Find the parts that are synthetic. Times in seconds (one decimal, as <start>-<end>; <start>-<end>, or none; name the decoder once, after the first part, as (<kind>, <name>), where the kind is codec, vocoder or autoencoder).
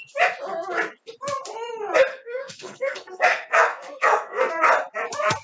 2.1-4.5 (codec, SNAC)